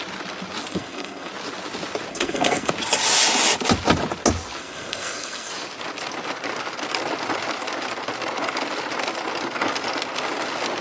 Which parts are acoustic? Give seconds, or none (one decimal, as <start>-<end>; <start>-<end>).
0.0-0.7; 1.3-2.1; 2.7-4.6; 5.5-10.8